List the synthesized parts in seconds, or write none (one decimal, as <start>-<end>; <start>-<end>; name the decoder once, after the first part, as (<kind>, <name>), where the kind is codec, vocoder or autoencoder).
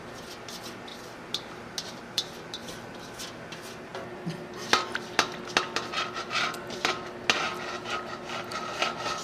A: none